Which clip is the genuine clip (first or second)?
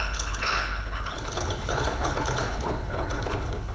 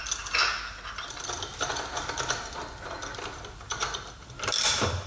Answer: second